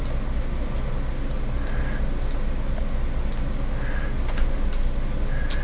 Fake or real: real